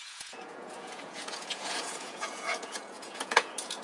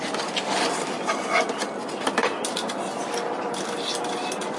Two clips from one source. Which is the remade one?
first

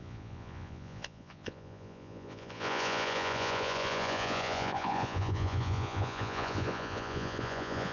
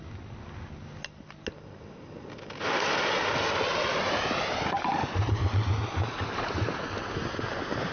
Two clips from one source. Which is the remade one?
first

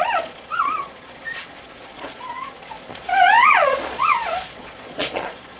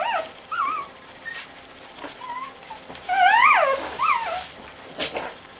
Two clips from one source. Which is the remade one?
first